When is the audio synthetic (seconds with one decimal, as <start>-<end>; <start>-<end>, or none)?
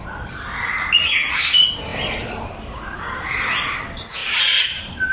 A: 4.2-5.1